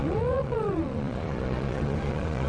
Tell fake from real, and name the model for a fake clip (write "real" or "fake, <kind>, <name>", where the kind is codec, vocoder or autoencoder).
fake, vocoder, Vocos